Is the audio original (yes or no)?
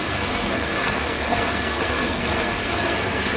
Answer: no